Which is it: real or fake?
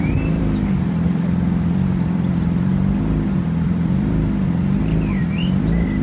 fake